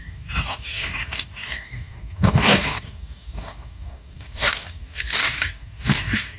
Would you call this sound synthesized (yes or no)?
yes